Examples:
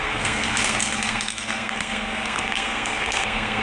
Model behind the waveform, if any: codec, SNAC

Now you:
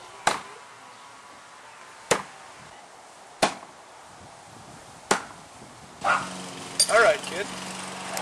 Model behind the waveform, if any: none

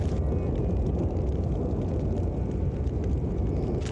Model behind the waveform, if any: none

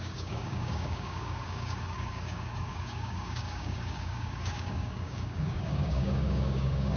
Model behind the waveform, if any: codec, DAC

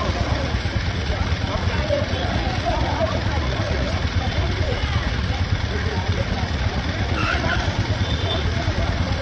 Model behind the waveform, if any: vocoder, Vocos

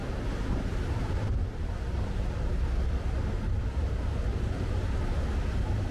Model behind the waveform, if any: none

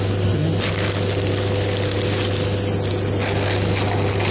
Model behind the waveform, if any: none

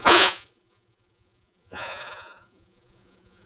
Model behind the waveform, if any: vocoder, Vocos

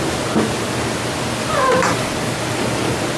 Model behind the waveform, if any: none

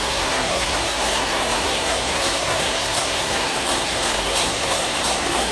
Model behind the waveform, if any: codec, SNAC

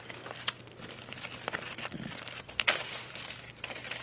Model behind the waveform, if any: vocoder, BigVGAN v2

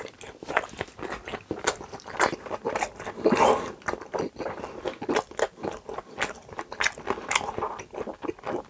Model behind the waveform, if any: none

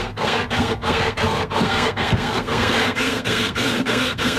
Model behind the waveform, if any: codec, SNAC